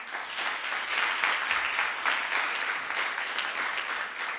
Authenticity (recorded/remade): recorded